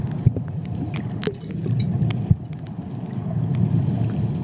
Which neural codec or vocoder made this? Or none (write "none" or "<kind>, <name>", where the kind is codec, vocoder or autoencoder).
none